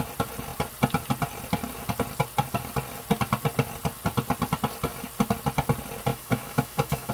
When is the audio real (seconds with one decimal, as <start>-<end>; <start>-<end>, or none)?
0.0-6.1